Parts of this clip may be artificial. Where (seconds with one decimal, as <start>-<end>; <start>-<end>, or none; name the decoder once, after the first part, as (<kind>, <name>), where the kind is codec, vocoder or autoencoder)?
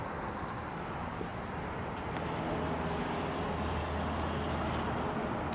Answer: none